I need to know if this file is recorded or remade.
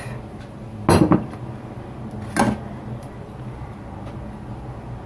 recorded